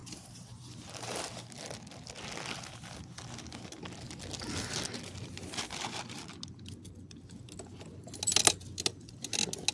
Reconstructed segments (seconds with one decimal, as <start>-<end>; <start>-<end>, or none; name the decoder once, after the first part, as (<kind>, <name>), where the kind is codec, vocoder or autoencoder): 0.0-1.3 (vocoder, BigVGAN v2)